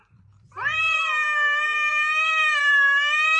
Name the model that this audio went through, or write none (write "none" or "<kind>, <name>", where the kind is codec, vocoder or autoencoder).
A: vocoder, BigVGAN v2